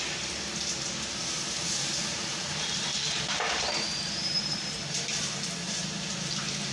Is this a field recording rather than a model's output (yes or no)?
no